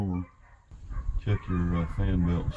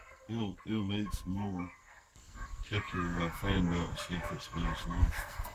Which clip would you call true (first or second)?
first